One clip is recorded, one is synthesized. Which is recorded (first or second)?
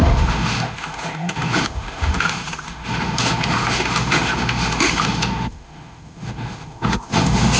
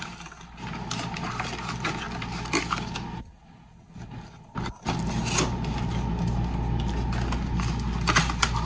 second